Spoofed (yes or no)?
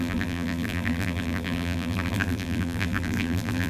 yes